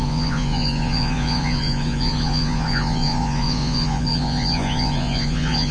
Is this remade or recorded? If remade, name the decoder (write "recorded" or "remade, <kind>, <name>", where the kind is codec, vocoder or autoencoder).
remade, vocoder, Vocos